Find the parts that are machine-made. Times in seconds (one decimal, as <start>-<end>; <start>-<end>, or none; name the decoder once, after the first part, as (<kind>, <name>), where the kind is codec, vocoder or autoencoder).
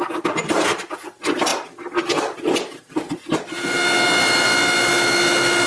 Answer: none